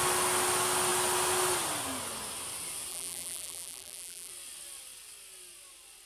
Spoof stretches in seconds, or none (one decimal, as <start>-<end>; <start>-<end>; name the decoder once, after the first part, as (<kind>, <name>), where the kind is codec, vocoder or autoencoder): 2.9-4.3 (vocoder, BigVGAN v2)